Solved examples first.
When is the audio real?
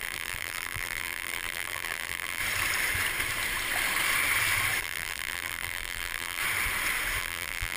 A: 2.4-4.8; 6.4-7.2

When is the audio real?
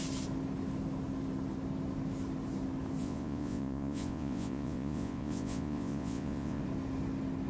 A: 0.0-3.0; 6.6-7.5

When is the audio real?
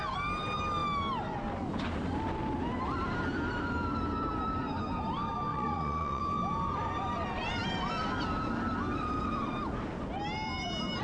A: 0.0-5.5; 6.2-11.0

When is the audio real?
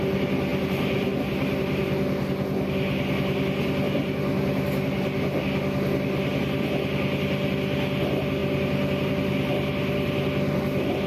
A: 0.0-11.1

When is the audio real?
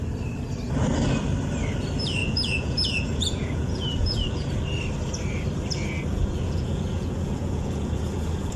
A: 0.0-2.2; 4.5-6.1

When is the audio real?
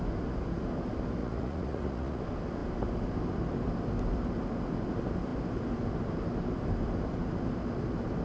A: 0.0-1.2; 2.2-8.2